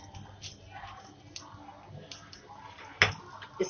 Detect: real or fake real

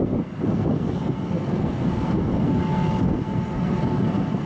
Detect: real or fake fake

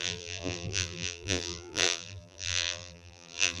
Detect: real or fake fake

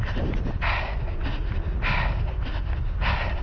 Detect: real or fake real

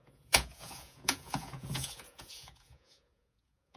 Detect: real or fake fake